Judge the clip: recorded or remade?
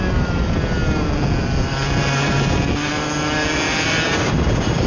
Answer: recorded